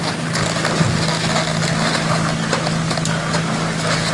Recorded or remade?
recorded